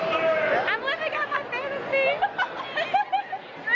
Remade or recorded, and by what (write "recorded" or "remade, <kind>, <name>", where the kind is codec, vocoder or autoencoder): recorded